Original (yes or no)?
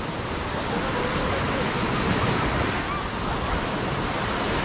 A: yes